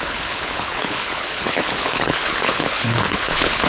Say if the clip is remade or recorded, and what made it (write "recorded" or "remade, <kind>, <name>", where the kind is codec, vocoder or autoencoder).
remade, codec, HILCodec